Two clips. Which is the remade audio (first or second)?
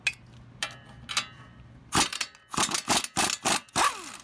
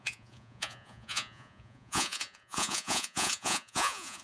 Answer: second